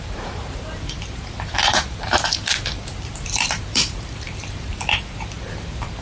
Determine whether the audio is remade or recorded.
remade